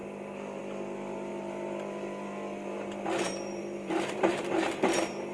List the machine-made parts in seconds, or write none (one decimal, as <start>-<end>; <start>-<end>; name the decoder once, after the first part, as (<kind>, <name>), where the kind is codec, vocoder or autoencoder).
0.0-0.6 (vocoder, BigVGAN v2); 1.3-4.5